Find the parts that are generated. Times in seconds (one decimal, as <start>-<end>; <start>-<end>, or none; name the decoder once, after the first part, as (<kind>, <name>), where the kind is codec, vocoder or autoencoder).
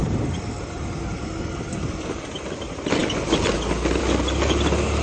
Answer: none